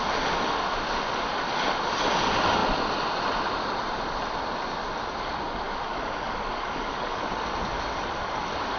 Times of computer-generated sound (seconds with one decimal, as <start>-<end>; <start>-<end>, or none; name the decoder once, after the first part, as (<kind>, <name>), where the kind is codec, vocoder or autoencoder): 5.9-7.2 (codec, DAC)